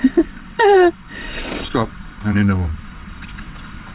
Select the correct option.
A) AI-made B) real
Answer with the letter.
A